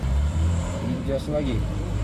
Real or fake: fake